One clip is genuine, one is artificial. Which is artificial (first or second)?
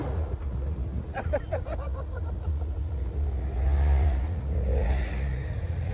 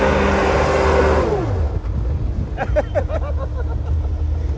first